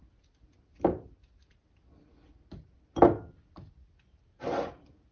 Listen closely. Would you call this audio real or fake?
real